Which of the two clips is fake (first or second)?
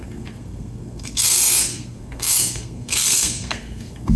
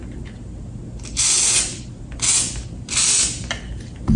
first